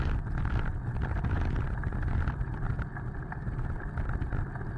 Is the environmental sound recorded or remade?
recorded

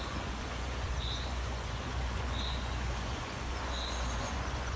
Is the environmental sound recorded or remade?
remade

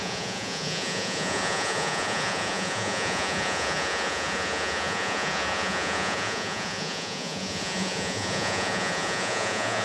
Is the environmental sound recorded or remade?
remade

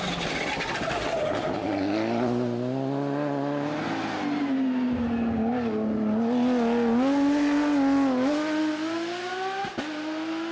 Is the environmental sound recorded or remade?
recorded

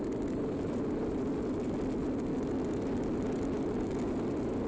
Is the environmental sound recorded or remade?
recorded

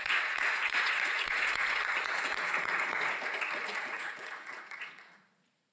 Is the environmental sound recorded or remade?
remade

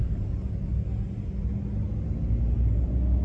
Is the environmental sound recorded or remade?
recorded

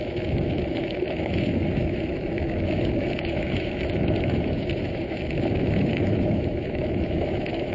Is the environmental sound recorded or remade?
remade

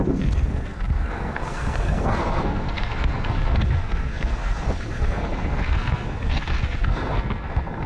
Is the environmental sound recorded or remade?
remade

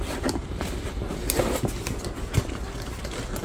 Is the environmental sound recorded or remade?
recorded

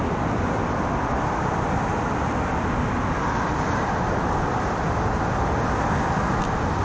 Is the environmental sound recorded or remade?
recorded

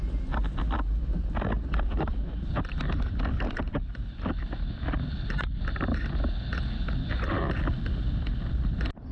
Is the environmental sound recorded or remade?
recorded